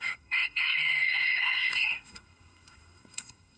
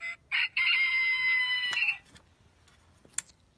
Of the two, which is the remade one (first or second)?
first